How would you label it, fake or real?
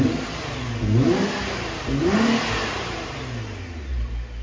real